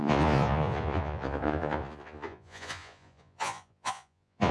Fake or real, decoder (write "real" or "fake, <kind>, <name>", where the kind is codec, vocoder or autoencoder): fake, vocoder, Vocos